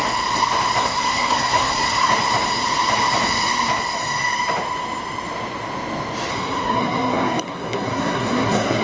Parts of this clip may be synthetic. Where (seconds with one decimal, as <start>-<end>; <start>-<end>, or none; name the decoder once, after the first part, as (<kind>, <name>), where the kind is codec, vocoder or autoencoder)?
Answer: 0.8-2.1 (codec, SNAC); 6.3-8.8